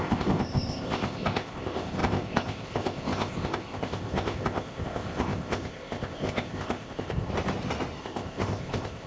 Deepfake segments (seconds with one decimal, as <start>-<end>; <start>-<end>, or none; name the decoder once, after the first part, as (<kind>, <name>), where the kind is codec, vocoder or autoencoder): 0.0-7.3 (codec, ZipCodec); 8.0-9.1